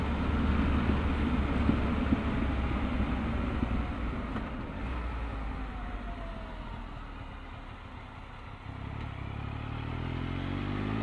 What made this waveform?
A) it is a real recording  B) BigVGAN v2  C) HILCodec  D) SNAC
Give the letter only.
A